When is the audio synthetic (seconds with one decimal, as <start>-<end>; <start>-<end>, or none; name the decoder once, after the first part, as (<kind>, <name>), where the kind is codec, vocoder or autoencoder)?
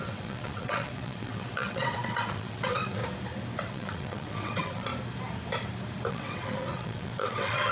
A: 0.0-3.0 (vocoder, WaveNeXt); 3.6-4.9; 6.1-7.7